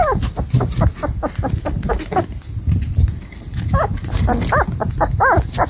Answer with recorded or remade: recorded